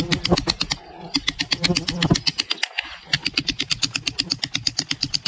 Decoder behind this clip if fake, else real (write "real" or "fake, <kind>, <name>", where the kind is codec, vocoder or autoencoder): real